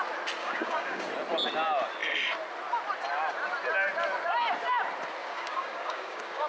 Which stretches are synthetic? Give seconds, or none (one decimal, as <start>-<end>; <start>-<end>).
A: 0.4-1.1; 5.2-6.5